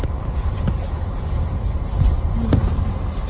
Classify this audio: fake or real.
real